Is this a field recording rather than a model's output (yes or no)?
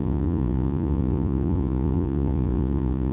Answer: no